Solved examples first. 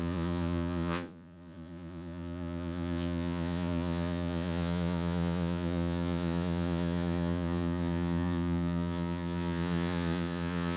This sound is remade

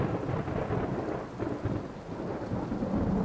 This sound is recorded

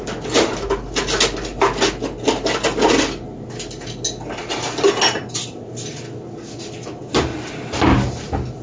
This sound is recorded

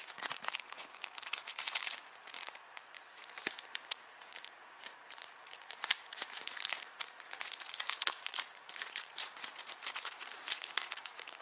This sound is remade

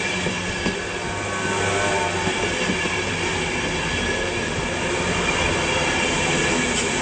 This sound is recorded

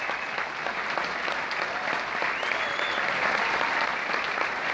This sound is recorded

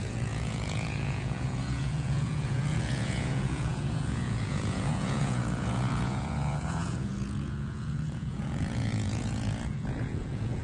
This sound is remade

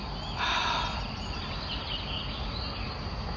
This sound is recorded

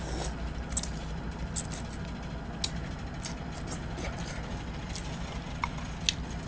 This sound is recorded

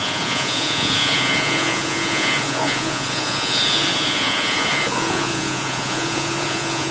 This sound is remade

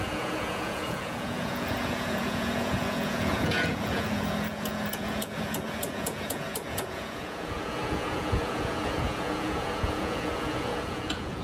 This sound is remade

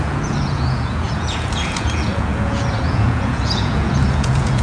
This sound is remade